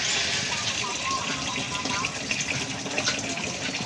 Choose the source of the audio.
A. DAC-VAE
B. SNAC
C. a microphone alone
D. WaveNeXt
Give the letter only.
C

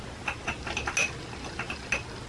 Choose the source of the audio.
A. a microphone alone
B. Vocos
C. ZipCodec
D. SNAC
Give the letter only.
A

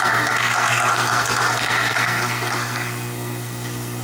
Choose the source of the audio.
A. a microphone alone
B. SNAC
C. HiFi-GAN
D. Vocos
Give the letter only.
B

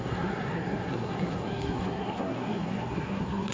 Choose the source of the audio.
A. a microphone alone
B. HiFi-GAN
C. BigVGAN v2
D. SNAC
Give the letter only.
D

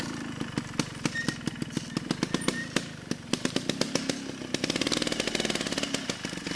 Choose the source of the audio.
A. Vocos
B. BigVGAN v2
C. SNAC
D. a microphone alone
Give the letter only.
D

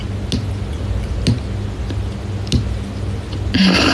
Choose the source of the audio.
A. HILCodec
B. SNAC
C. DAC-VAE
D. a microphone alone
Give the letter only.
D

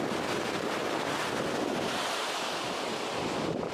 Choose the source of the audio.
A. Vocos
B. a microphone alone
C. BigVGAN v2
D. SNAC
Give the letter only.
B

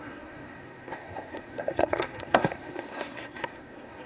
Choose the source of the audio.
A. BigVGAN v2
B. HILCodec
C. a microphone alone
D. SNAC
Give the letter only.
D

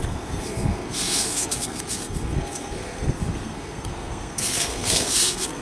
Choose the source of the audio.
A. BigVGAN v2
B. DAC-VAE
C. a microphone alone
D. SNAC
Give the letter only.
D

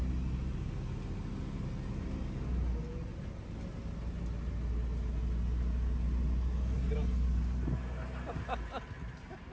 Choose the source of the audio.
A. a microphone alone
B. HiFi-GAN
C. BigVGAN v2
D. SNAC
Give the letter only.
A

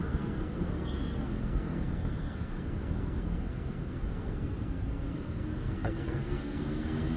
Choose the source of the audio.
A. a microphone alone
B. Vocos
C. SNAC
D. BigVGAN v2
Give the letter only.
C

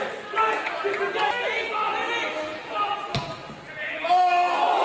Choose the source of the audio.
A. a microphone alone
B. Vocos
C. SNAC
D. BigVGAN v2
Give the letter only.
A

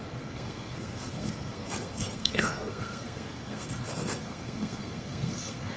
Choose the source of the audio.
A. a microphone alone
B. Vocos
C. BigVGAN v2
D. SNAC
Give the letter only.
D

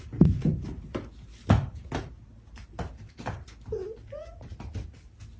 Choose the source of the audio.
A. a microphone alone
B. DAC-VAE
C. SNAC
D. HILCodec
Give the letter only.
A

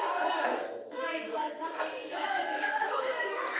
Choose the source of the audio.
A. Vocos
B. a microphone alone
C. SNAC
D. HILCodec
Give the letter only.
C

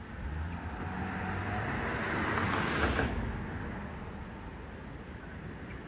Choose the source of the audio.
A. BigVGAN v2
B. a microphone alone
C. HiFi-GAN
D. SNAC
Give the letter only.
B